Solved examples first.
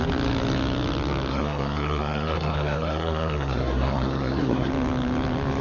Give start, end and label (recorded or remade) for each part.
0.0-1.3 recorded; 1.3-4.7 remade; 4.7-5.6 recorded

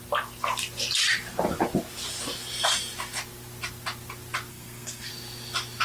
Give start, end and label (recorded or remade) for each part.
0.0-4.5 recorded; 4.5-5.1 remade; 5.1-5.8 recorded

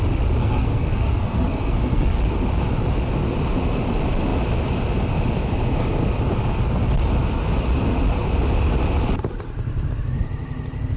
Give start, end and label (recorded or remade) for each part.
0.0-0.4 recorded; 0.4-2.2 remade; 2.2-11.0 recorded

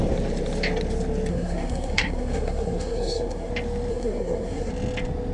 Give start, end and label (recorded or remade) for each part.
0.0-1.3 recorded; 1.3-3.5 remade; 3.5-3.9 recorded; 3.9-4.7 remade; 4.7-5.3 recorded

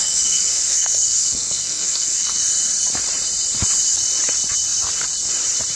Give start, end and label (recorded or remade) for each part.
0.0-2.4 remade; 2.4-5.8 recorded